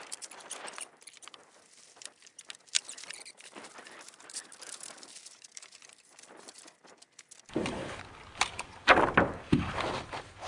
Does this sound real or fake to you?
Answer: real